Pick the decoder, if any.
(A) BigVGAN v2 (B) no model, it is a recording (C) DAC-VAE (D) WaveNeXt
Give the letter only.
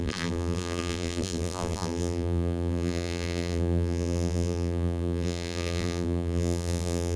A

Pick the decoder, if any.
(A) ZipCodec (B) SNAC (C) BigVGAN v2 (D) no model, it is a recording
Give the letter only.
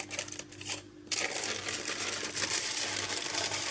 C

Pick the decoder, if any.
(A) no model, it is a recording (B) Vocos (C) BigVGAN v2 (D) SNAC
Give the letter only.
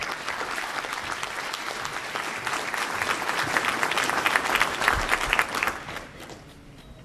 C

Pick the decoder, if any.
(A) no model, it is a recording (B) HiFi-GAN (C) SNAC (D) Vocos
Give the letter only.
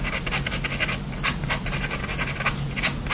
A